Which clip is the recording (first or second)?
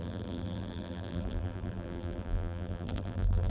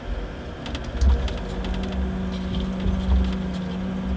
second